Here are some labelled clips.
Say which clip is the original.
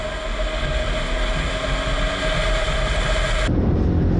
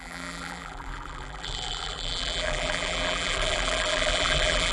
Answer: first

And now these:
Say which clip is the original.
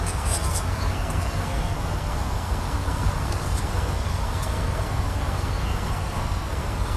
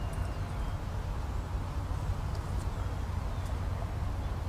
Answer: second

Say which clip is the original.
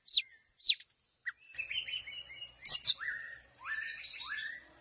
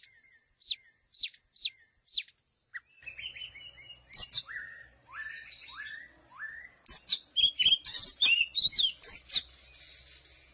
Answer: second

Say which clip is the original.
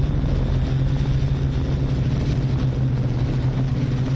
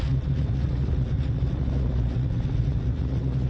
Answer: first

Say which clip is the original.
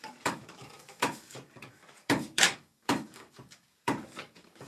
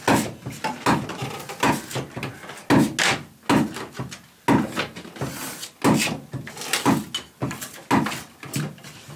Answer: second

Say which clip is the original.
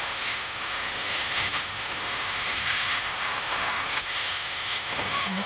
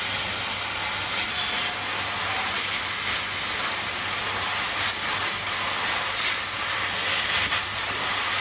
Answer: second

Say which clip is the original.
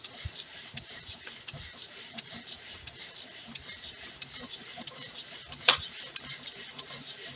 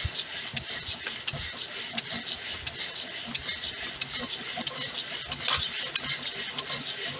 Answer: second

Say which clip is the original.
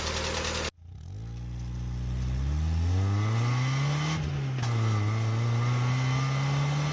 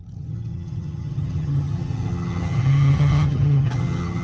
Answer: first